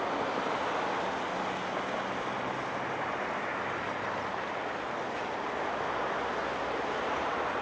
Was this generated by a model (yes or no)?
no